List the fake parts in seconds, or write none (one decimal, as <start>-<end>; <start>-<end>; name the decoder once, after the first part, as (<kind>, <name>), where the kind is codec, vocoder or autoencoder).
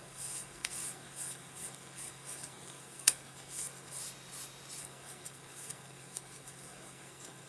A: 0.0-4.0 (codec, SNAC); 4.8-7.5